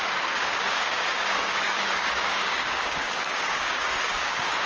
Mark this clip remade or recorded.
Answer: remade